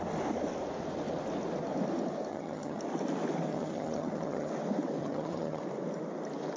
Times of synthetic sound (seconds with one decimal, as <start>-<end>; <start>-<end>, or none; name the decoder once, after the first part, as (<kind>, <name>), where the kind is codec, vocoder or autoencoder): 2.3-2.8 (vocoder, HiFi-GAN); 3.5-4.5; 5.0-5.6